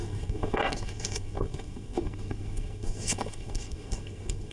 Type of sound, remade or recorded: remade